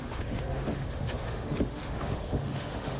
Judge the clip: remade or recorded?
remade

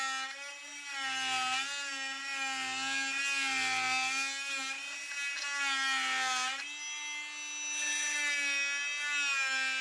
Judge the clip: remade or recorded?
recorded